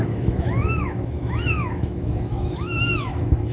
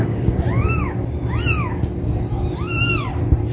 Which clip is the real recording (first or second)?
second